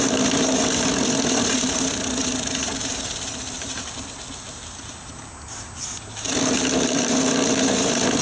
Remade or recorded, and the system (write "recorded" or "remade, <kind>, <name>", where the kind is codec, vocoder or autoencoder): recorded